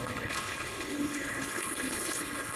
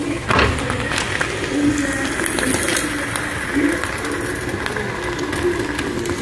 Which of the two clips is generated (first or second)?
first